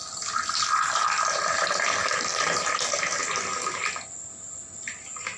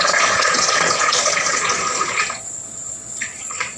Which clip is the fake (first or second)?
second